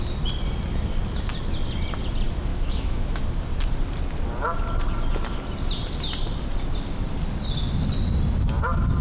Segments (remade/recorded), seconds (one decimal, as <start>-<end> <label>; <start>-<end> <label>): 0.0-2.5 recorded; 2.5-3.2 remade; 3.2-9.0 recorded